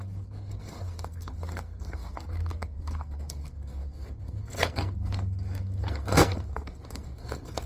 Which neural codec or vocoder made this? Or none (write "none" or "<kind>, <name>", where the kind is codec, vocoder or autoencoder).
codec, SNAC